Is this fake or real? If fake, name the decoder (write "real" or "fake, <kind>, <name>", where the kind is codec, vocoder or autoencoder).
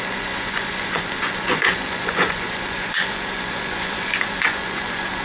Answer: fake, vocoder, Vocos